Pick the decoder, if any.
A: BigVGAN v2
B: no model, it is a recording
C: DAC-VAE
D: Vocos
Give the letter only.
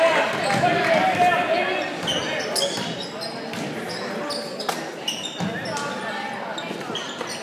B